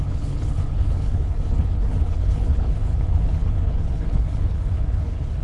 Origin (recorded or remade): remade